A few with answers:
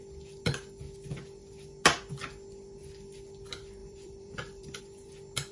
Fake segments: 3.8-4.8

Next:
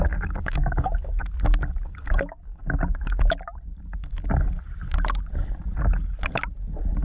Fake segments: 0.0-1.2; 1.8-2.6

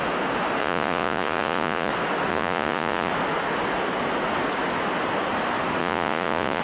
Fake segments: 0.6-1.9; 2.3-3.1; 5.8-6.6

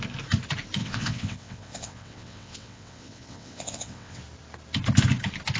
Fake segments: 0.8-4.2